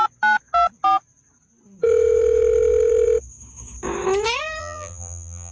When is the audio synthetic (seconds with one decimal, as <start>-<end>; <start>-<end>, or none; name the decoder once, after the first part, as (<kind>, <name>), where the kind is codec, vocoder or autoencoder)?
4.6-5.5 (vocoder, BigVGAN v2)